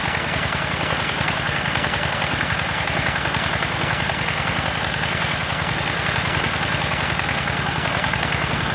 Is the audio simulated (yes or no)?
yes